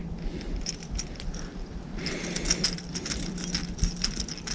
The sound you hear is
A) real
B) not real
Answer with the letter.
A